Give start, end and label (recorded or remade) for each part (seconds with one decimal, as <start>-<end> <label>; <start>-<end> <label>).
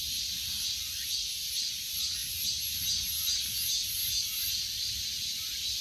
0.0-5.8 recorded